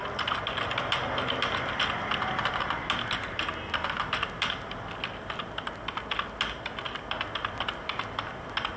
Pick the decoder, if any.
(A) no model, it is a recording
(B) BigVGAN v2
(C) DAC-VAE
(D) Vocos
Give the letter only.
A